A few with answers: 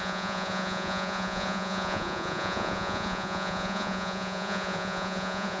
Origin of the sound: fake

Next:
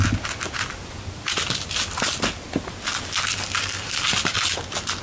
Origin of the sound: real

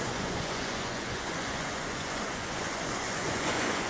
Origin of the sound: fake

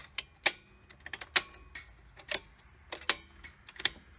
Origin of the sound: real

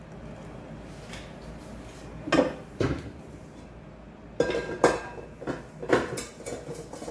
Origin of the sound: real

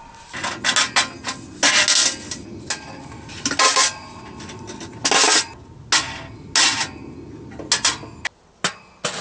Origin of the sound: real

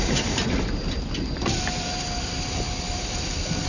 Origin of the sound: fake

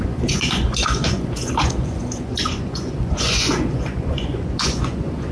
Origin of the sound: fake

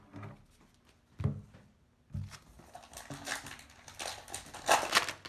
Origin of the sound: real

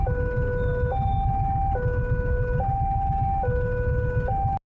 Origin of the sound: real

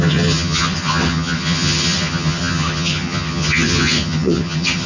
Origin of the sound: fake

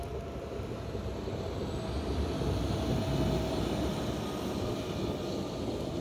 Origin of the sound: real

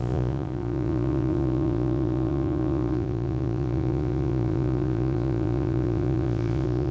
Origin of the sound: fake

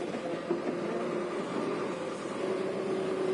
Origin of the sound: real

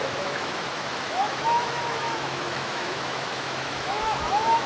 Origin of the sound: fake